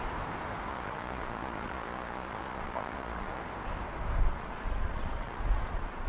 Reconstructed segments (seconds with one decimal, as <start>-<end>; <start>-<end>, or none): 0.7-3.4; 4.3-6.1